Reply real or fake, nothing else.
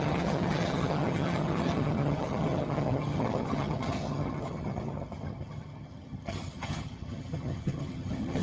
fake